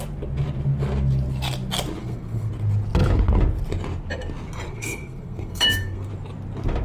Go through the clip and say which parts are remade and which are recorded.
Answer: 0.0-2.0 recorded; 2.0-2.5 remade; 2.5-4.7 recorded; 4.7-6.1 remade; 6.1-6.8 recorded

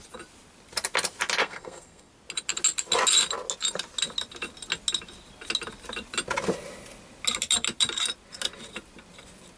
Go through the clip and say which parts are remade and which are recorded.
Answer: 0.0-1.4 recorded; 1.4-2.1 remade; 2.1-9.6 recorded

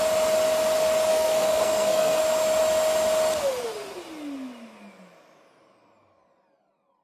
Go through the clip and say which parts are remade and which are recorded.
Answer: 0.0-1.1 recorded; 1.1-2.2 remade; 2.2-7.0 recorded

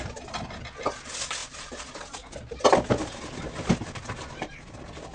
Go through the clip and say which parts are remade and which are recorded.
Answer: 0.0-5.1 recorded

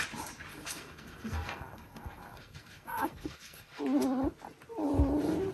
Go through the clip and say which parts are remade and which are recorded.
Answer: 0.0-0.5 recorded; 0.5-3.8 remade; 3.8-5.5 recorded

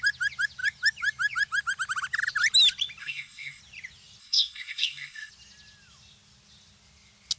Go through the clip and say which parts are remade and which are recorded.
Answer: 0.0-3.0 recorded; 3.0-3.6 remade; 3.6-4.2 recorded; 4.2-5.3 remade; 5.3-7.4 recorded